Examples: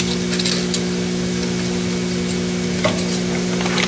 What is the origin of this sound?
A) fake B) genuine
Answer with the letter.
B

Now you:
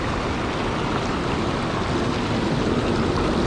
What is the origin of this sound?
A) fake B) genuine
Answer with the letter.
B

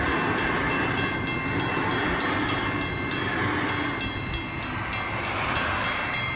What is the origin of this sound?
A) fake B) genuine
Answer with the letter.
B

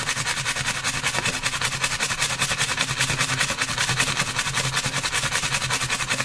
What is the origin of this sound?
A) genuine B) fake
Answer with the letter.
A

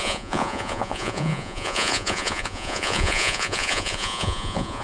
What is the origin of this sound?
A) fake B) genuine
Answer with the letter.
A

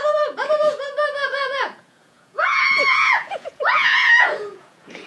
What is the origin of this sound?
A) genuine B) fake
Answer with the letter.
B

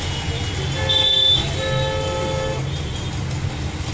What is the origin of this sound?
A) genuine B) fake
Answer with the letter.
A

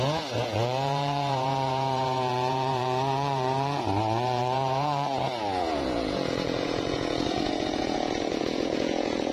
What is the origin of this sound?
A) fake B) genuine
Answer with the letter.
A